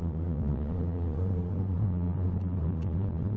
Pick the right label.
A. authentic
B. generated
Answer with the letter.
B